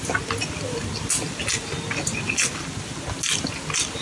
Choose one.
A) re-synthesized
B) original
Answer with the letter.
B